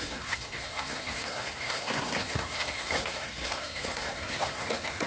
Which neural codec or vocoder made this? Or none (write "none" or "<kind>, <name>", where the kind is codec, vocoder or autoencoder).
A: codec, SNAC